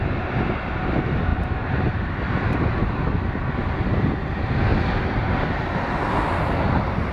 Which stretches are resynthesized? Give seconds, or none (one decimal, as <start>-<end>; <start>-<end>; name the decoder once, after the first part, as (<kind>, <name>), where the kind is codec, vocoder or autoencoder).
1.3-2.9 (vocoder, BigVGAN v2)